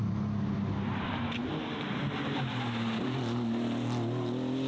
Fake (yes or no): no